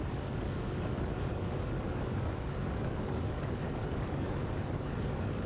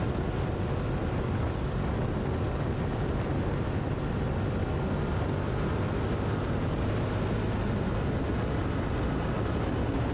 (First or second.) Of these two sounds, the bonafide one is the second